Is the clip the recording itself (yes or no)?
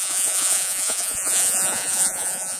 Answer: no